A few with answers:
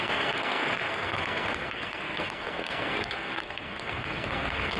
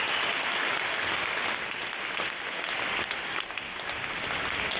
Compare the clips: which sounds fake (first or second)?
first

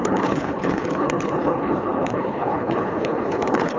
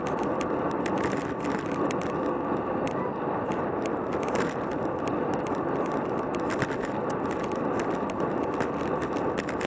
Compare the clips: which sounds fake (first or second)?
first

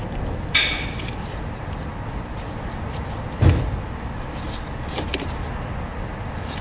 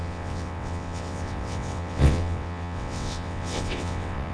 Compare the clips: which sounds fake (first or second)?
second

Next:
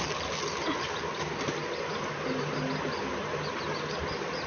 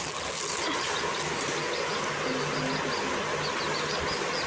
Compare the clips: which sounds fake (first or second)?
first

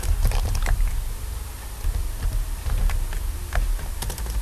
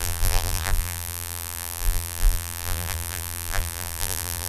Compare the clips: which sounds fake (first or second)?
second